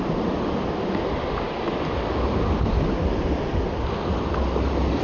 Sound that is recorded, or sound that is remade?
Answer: recorded